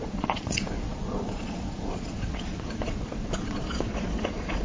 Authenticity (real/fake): fake